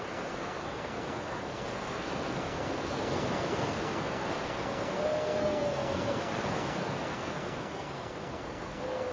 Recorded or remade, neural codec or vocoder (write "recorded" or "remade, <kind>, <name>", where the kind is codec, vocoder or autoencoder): remade, codec, SNAC